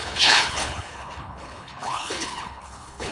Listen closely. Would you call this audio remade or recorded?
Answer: remade